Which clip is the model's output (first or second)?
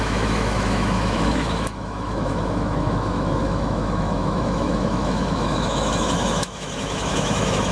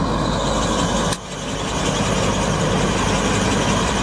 first